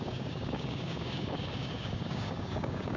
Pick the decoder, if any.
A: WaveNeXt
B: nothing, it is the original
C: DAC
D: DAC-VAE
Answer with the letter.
C